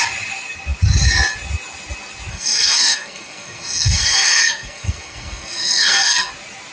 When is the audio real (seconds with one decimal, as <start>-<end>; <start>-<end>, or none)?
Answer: 0.0-2.3; 6.3-6.7